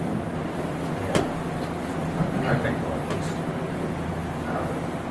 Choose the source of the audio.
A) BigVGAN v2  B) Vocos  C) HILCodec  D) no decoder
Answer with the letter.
D